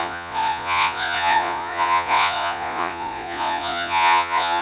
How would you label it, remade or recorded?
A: remade